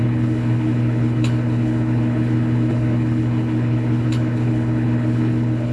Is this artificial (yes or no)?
yes